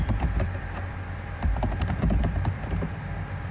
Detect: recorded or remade remade